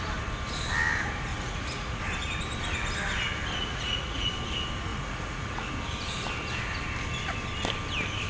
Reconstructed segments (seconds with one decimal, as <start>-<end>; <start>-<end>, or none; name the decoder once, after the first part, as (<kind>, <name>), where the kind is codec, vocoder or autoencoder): 1.3-2.0 (vocoder, Vocos); 3.6-4.3; 4.9-5.7